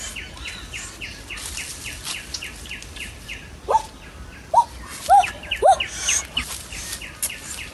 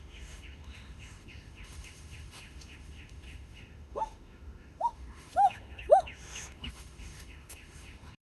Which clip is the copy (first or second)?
second